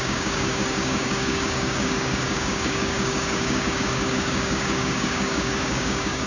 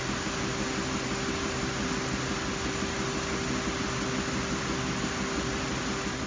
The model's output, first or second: first